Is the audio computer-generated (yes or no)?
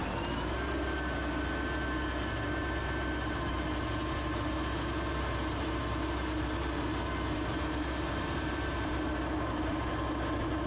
no